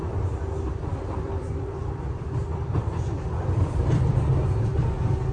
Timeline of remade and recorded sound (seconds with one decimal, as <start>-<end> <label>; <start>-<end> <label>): 0.0-0.9 recorded; 0.9-4.1 remade; 4.1-5.3 recorded